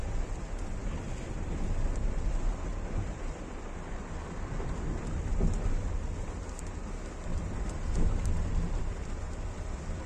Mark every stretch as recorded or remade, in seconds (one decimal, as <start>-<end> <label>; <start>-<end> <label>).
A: 0.0-7.3 recorded; 7.3-8.8 remade; 8.8-10.1 recorded